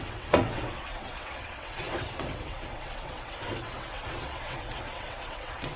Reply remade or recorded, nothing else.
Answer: remade